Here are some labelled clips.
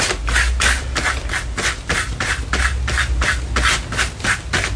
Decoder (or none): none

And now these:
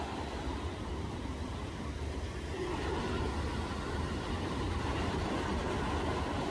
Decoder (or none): none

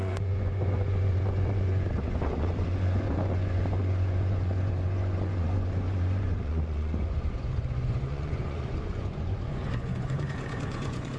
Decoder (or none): vocoder, Vocos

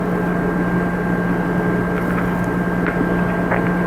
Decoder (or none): none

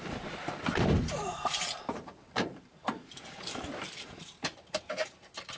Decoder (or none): vocoder, BigVGAN v2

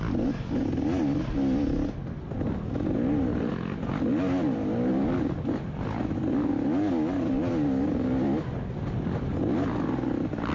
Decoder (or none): none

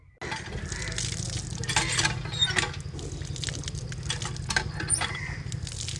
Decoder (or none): none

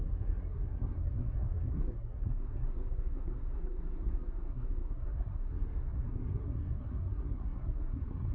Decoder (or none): codec, SNAC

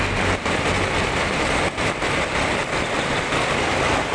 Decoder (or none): none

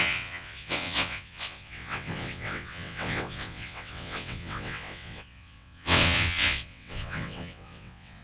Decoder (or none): vocoder, WaveNeXt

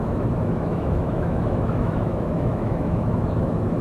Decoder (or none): autoencoder, DAC-VAE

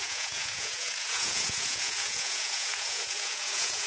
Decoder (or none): vocoder, Vocos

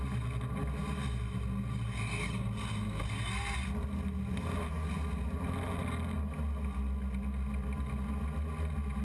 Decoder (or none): none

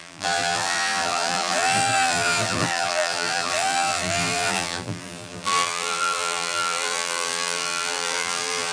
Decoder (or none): vocoder, BigVGAN v2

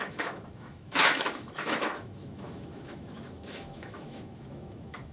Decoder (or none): autoencoder, DAC-VAE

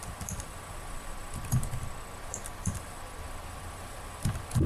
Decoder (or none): none